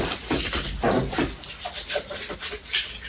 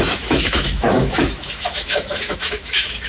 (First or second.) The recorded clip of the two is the first